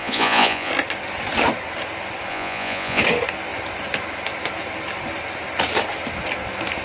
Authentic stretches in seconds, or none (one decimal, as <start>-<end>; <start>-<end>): 0.7-2.3; 3.0-6.8